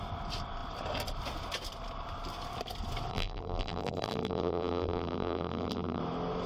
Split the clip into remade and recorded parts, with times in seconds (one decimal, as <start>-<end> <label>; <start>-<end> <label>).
0.0-3.1 recorded; 3.1-6.0 remade; 6.0-6.5 recorded